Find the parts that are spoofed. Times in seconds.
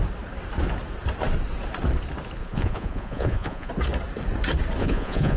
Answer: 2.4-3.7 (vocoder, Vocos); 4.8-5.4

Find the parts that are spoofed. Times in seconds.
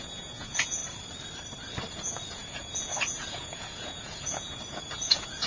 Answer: 0.0-0.8 (vocoder, Vocos); 1.9-5.5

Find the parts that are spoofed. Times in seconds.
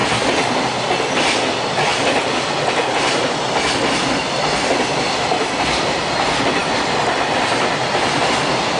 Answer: none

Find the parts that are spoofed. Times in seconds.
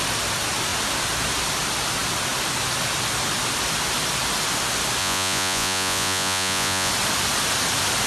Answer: 5.0-6.9 (vocoder, Vocos)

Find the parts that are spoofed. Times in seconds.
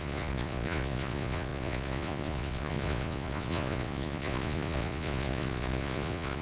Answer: 0.0-6.4 (vocoder, Vocos)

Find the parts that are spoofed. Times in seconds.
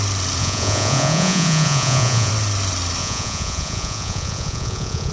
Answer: 0.4-2.3 (vocoder, Vocos); 3.0-5.1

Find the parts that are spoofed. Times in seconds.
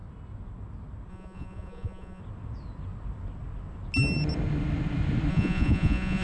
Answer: 1.1-2.2 (vocoder, Vocos); 5.3-6.2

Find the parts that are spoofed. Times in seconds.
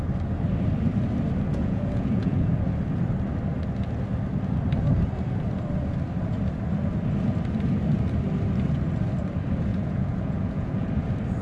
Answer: 1.5-2.6 (vocoder, Vocos); 9.7-10.9